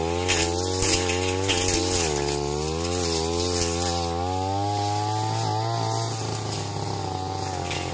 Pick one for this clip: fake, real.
real